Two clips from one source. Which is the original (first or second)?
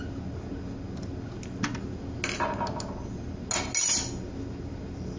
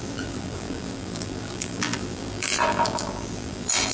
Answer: first